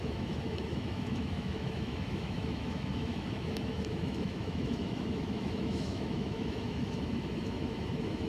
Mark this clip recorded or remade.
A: remade